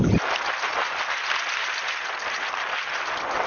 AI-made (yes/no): no